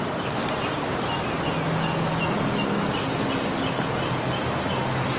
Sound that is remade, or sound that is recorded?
recorded